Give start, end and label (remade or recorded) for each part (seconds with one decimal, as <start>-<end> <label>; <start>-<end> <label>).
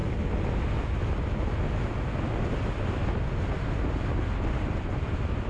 0.0-5.5 recorded